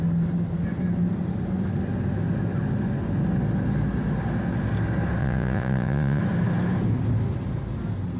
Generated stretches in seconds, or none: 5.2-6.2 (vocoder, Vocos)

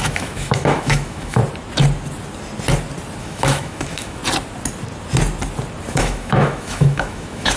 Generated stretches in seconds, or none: 0.0-1.4 (autoencoder, DAC-VAE); 3.2-4.2; 5.9-7.6

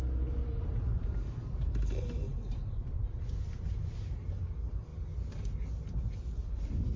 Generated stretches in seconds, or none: 0.4-1.7 (vocoder, BigVGAN v2); 2.3-3.0

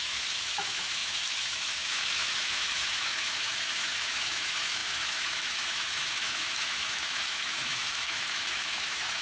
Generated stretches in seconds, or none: 0.0-9.2 (autoencoder, DAC-VAE)

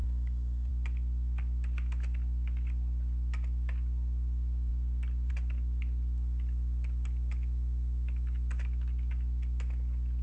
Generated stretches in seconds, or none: 0.0-0.7 (codec, SNAC)

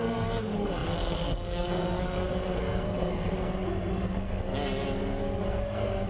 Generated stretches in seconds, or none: 0.0-4.5 (codec, SNAC); 5.4-6.1

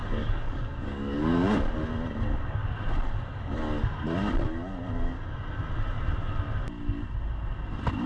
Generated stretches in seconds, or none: 0.0-1.6 (codec, DAC)

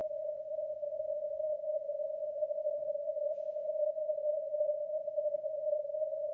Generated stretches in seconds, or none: none